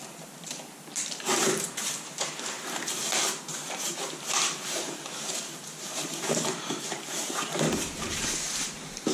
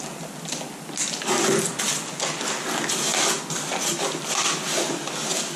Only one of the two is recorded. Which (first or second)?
second